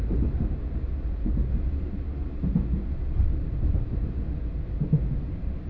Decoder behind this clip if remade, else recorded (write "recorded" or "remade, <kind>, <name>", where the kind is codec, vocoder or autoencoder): recorded